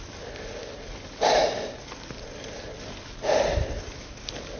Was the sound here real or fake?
real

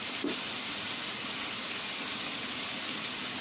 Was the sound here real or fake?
real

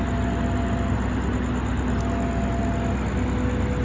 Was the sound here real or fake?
real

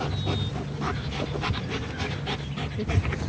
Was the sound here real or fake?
real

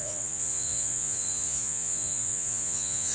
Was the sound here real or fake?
fake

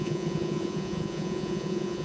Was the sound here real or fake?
fake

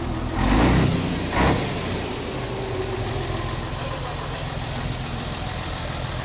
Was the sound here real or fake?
real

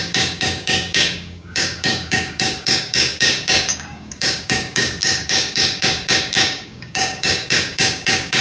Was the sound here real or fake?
fake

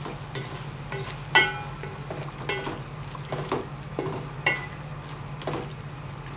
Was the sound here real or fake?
real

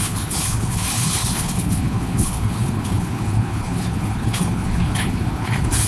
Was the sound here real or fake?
fake